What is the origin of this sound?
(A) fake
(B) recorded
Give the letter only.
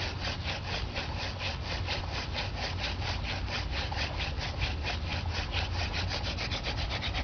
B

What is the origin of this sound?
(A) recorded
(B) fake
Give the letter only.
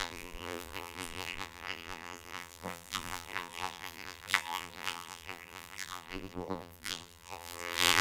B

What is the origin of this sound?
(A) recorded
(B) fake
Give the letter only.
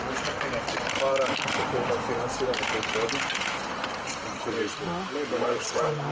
A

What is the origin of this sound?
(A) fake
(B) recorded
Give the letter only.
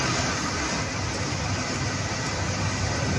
B